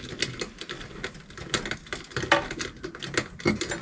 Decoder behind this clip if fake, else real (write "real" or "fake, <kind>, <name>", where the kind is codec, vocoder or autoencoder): real